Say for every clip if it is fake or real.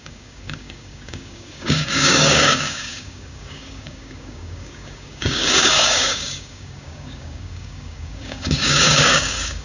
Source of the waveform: fake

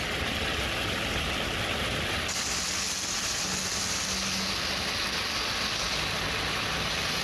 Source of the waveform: real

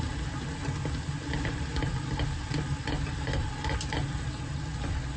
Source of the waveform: real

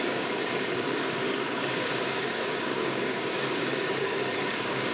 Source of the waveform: fake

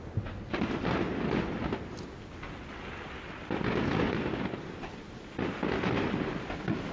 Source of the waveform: real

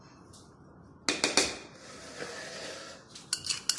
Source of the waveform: real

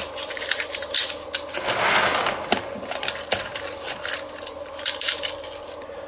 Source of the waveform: real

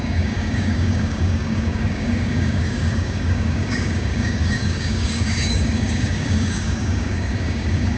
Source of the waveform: fake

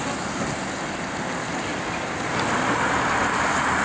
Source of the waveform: real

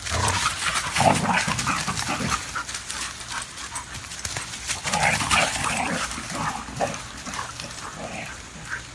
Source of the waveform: real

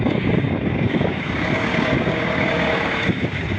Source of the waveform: fake